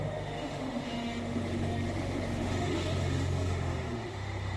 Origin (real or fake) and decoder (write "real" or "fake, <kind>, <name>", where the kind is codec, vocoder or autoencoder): fake, autoencoder, DAC-VAE